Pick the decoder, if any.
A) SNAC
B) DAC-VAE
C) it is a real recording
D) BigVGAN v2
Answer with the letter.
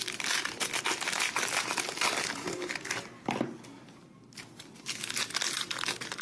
C